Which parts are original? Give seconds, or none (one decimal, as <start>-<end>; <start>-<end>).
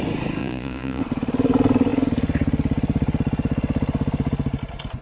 0.0-0.4; 1.0-5.0